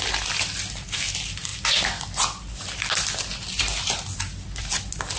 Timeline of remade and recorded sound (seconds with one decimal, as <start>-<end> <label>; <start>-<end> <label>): 0.0-5.2 recorded